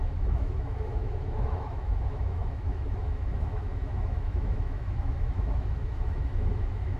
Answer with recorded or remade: remade